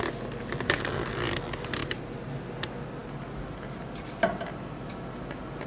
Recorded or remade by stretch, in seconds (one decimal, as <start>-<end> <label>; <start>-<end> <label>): 0.0-1.8 recorded; 1.8-2.3 remade; 2.3-5.7 recorded